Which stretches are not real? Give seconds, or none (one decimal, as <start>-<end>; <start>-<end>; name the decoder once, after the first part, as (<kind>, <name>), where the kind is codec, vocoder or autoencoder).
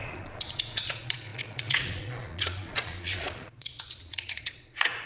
0.0-5.1 (vocoder, Vocos)